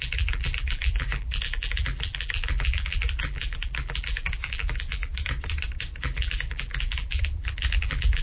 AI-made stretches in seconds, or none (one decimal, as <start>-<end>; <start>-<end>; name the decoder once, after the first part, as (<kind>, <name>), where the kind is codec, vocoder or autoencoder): 0.0-5.1 (vocoder, BigVGAN v2); 6.0-8.2